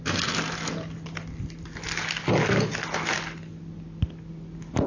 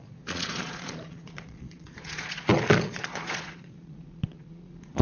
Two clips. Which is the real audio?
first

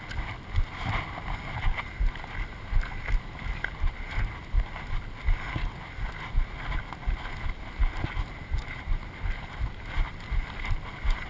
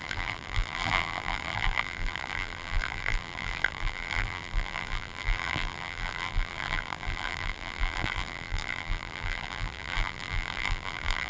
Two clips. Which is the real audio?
first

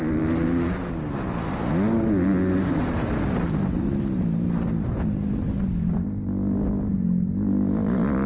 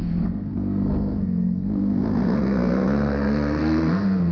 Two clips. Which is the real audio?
first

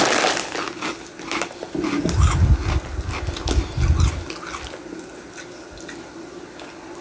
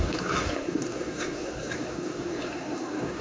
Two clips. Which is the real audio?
first